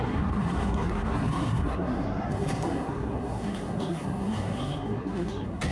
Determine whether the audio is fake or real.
fake